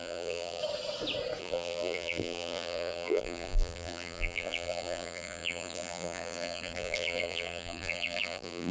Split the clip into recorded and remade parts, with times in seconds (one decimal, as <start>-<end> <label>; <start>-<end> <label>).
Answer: 0.0-0.6 remade; 0.6-1.4 recorded; 1.4-8.7 remade